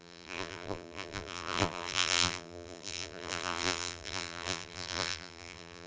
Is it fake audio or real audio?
fake